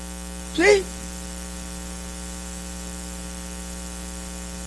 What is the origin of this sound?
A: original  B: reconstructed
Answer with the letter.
A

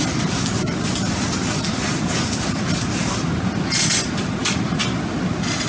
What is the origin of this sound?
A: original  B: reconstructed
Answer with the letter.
A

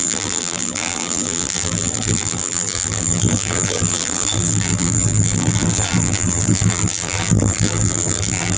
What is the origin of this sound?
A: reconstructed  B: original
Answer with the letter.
A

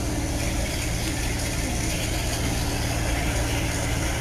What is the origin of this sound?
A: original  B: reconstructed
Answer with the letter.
A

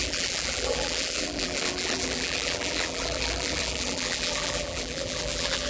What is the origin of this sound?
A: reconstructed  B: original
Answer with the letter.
A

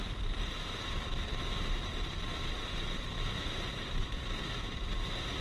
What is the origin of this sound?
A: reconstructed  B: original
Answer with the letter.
A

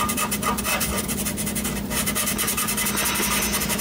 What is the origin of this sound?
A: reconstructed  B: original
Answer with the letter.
A